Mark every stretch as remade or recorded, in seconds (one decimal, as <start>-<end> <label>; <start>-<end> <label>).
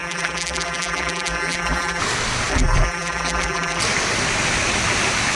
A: 0.0-2.0 remade; 2.0-2.5 recorded; 2.5-3.8 remade; 3.8-5.4 recorded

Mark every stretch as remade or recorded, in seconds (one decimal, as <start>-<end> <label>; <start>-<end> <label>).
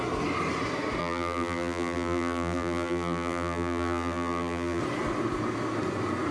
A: 0.0-1.0 recorded; 1.0-4.8 remade; 4.8-6.3 recorded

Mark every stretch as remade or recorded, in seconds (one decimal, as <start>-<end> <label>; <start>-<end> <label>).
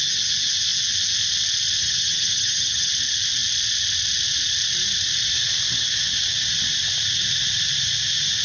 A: 0.0-1.8 recorded; 1.8-2.9 remade; 2.9-8.4 recorded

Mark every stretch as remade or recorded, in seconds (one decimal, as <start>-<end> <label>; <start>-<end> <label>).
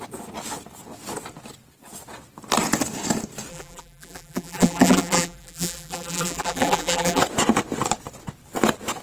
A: 0.0-3.5 recorded; 3.5-7.2 remade; 7.2-9.0 recorded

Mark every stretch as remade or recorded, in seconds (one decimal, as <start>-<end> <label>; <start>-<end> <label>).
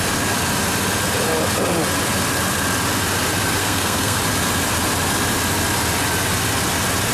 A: 0.0-3.6 recorded; 3.6-4.2 remade; 4.2-7.1 recorded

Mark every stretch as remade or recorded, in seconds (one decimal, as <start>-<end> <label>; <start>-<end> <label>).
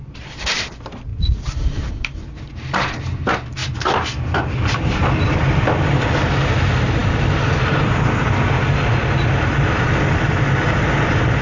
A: 0.0-1.1 remade; 1.1-1.9 recorded; 1.9-3.6 remade; 3.6-5.5 recorded; 5.5-11.4 remade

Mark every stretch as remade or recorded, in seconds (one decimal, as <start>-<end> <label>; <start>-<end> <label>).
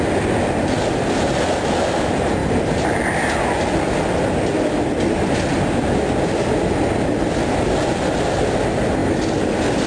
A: 0.0-9.9 recorded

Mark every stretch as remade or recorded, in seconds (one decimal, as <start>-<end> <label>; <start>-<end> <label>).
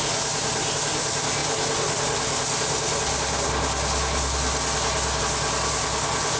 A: 0.0-6.4 recorded